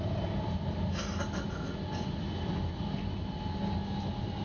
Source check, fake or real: real